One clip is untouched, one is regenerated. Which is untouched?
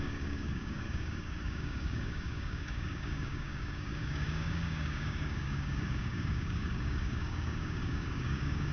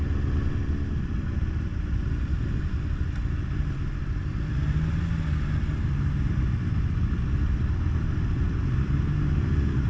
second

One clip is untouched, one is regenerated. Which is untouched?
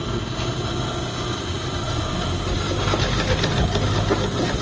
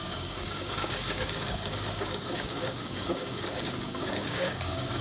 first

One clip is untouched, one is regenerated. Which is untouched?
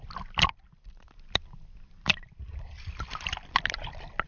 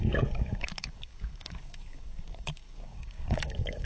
first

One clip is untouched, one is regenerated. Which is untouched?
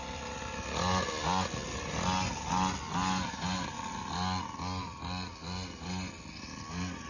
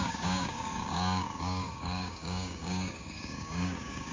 first